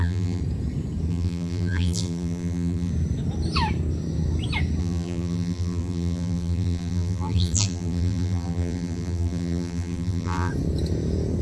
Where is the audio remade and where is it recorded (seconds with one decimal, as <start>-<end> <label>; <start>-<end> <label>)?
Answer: 0.0-0.4 remade; 0.4-1.1 recorded; 1.1-2.9 remade; 2.9-4.8 recorded; 4.8-10.5 remade; 10.5-11.4 recorded